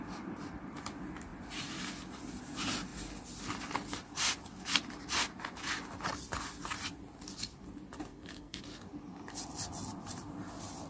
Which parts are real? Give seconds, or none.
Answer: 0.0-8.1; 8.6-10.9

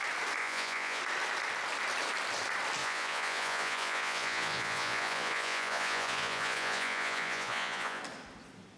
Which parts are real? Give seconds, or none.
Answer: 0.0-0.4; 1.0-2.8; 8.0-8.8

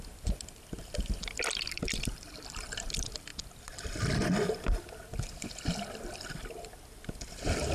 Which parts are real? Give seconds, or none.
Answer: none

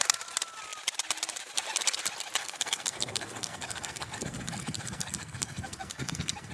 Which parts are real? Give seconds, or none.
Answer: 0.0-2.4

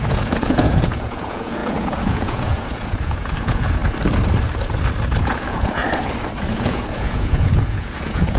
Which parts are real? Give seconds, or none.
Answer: 3.8-5.2; 5.8-6.5

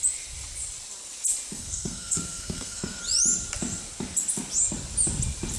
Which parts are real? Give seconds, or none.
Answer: 0.0-1.5; 3.0-5.6

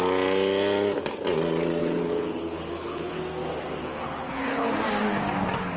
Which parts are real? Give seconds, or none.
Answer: 0.0-1.8; 3.2-3.8; 4.7-5.8

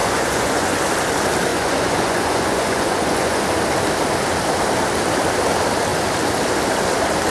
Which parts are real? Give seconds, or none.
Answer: 0.8-1.5; 3.4-7.3